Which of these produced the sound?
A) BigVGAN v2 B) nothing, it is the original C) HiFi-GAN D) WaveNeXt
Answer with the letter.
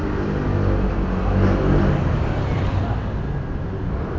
B